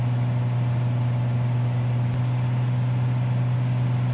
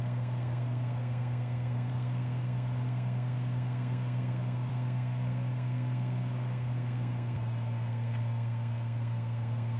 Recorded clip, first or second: first